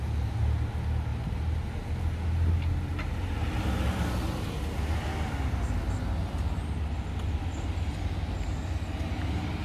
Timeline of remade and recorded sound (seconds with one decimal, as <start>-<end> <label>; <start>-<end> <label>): 0.0-9.6 recorded